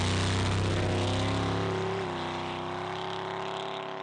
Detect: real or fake real